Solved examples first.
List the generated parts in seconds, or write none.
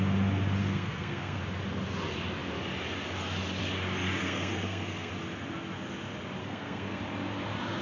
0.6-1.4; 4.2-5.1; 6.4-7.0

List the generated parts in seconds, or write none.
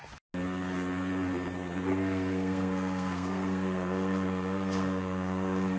1.9-5.8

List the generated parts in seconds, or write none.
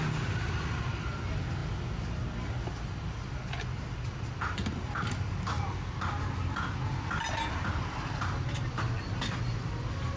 none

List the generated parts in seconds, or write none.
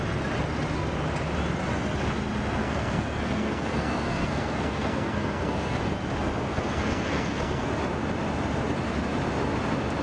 2.6-5.8; 6.5-7.8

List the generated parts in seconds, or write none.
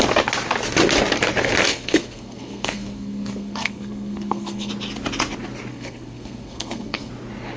1.7-4.7; 5.7-7.1